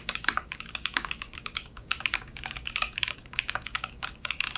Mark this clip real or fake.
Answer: fake